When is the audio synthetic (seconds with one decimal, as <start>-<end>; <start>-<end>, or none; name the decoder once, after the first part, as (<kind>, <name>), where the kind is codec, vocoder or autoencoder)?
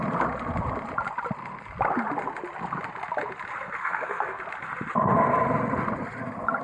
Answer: 3.8-4.4 (codec, SNAC)